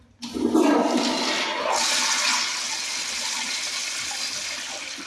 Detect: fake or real real